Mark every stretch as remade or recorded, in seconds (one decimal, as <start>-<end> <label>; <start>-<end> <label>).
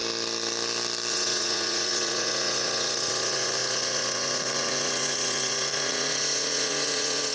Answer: 0.0-1.1 recorded; 1.1-7.3 remade